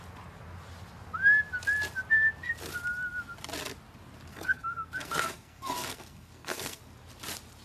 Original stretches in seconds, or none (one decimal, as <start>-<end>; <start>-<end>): 0.0-4.3; 6.8-7.6